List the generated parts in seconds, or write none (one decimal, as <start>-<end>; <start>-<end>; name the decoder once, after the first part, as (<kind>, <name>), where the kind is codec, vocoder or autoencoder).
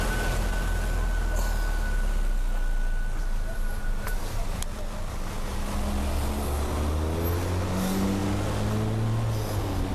3.2-4.6 (vocoder, BigVGAN v2)